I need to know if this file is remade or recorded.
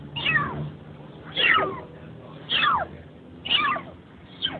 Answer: recorded